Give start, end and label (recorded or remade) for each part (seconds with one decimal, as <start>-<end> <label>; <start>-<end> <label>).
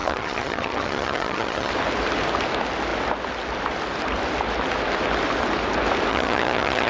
0.0-1.7 remade; 1.7-6.1 recorded; 6.1-6.9 remade